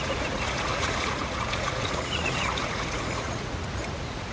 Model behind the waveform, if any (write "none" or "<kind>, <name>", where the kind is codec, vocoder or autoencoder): vocoder, Vocos